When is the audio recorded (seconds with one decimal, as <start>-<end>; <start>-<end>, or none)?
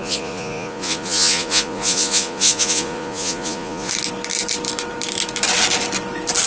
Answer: 3.9-6.5